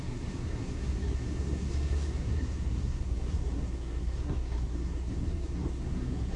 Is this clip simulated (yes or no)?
yes